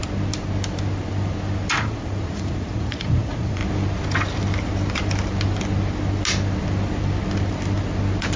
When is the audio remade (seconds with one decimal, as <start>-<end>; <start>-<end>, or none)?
1.7-3.6